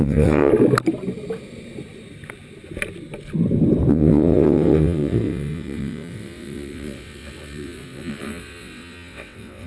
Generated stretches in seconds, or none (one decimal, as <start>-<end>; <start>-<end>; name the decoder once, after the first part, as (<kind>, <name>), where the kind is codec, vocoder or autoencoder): 0.0-0.5 (vocoder, WaveNeXt); 3.9-9.7